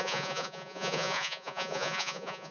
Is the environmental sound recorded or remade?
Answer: remade